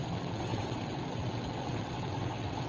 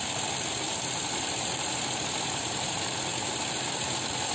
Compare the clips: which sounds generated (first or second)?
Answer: first